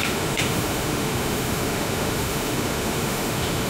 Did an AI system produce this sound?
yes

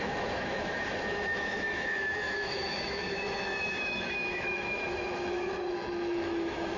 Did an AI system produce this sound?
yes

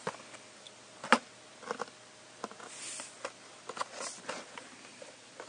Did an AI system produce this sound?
no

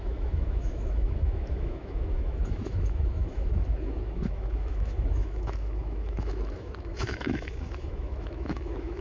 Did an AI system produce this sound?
yes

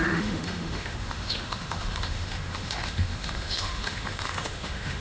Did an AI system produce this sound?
yes